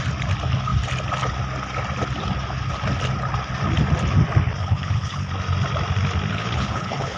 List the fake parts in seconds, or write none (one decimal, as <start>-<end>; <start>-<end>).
4.6-5.3; 6.3-7.2